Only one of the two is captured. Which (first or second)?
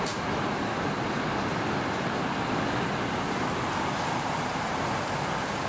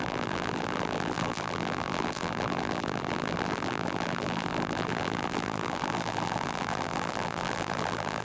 first